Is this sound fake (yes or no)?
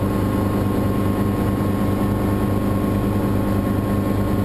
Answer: no